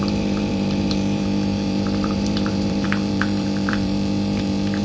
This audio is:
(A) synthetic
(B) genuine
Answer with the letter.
A